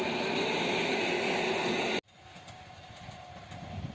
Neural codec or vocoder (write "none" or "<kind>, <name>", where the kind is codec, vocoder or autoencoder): none